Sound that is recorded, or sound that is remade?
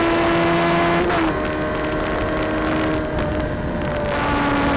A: recorded